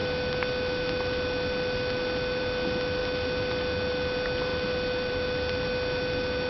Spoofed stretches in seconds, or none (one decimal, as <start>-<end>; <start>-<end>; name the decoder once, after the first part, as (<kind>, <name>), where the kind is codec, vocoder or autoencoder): none